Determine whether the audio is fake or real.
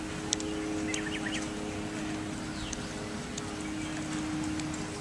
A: real